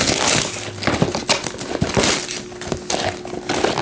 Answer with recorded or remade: recorded